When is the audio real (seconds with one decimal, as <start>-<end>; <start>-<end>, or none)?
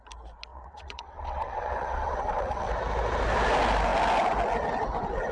0.0-0.5; 2.7-5.3